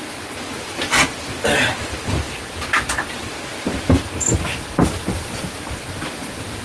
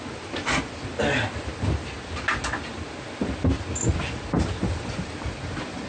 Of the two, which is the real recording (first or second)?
second